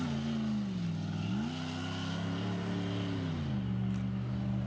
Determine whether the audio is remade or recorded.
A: recorded